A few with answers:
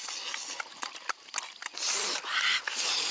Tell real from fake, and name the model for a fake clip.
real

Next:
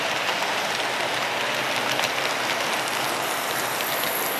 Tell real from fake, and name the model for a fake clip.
real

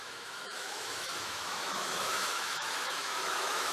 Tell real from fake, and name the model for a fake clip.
fake, autoencoder, DAC-VAE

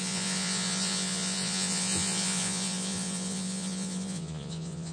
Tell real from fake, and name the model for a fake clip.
fake, vocoder, Vocos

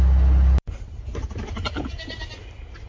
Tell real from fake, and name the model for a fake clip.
real